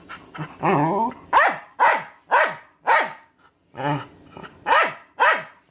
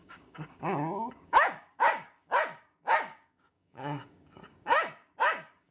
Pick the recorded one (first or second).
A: first